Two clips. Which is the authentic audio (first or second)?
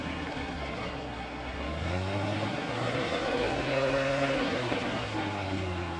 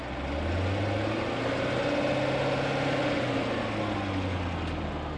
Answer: second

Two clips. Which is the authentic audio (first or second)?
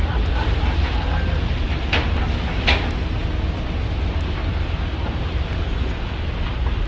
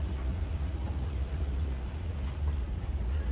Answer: first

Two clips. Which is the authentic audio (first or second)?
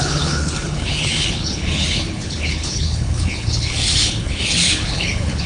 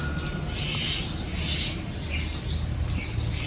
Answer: second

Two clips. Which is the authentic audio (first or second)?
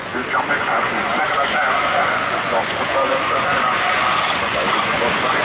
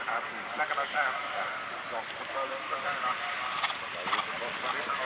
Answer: second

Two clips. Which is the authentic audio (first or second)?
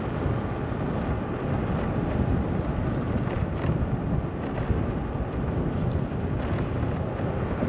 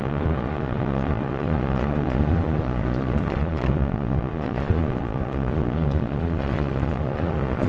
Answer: first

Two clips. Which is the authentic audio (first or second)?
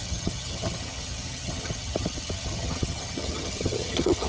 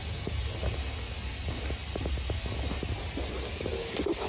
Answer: second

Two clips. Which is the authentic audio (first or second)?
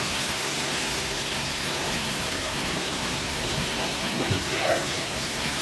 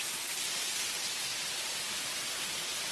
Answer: second